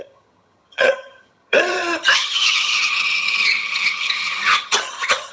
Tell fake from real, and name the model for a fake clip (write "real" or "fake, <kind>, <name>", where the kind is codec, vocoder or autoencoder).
fake, vocoder, HiFi-GAN